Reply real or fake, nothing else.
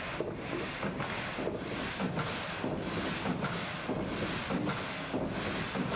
real